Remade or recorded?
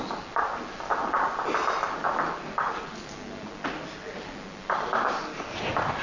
recorded